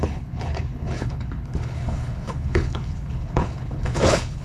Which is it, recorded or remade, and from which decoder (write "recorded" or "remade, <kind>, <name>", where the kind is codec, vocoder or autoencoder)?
remade, codec, HILCodec